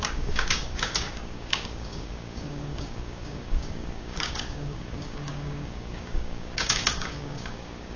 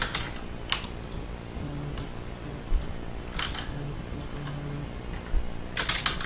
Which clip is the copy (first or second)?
first